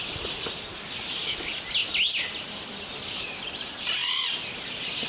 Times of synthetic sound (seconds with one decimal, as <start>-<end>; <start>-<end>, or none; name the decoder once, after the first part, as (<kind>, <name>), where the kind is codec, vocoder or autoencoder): none